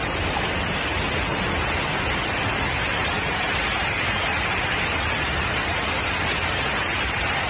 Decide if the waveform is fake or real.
real